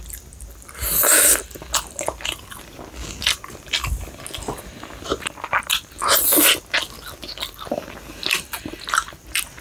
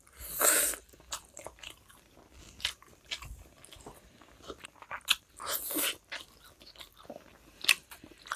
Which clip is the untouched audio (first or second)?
first